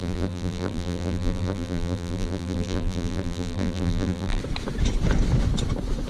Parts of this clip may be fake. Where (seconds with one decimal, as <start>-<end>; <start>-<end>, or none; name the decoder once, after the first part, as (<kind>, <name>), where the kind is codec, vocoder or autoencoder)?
0.0-4.4 (vocoder, BigVGAN v2)